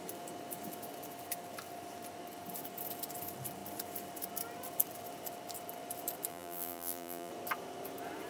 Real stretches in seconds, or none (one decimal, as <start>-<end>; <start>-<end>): 0.0-6.3; 7.3-8.3

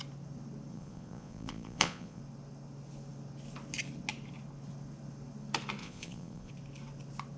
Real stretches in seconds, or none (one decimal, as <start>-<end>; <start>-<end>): 0.0-0.7; 2.2-5.8; 6.5-7.4